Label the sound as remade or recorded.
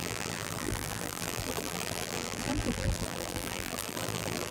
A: remade